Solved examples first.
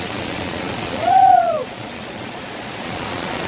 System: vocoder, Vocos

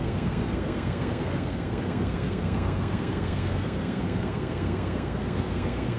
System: codec, SNAC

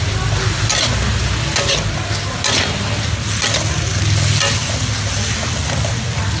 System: none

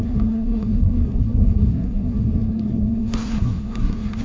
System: codec, SNAC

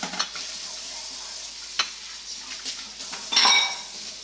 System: none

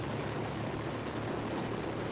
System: none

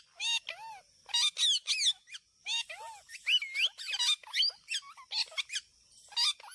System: none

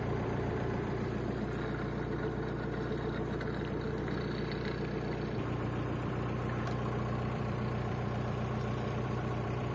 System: vocoder, BigVGAN v2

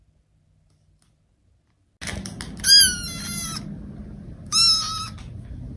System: none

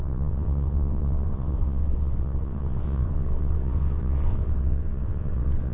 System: vocoder, WaveNeXt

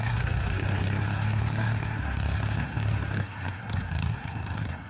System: codec, SNAC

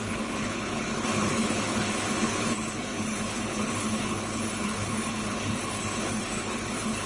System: codec, HILCodec